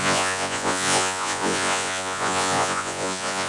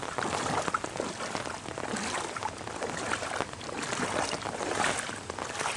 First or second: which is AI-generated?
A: first